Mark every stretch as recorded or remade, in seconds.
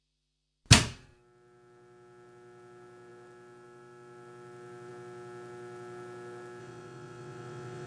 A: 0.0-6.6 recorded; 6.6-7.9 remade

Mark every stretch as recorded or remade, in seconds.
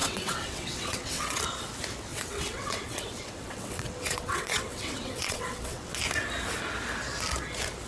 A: 0.0-1.4 remade; 1.4-2.1 recorded; 2.1-6.0 remade; 6.0-7.9 recorded